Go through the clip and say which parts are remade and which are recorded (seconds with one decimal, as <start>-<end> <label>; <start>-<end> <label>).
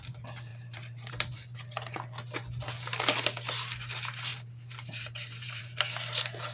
0.0-0.5 recorded; 0.5-1.1 remade; 1.1-4.3 recorded; 4.3-5.6 remade; 5.6-6.5 recorded